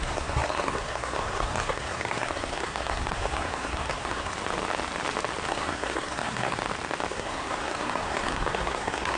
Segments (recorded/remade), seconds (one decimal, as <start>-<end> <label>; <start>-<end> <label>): 0.0-4.3 remade; 4.3-5.5 recorded; 5.5-6.6 remade; 6.6-7.1 recorded; 7.1-9.2 remade